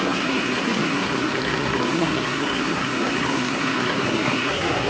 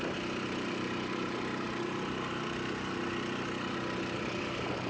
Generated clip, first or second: first